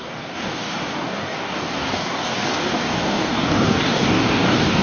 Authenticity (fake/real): fake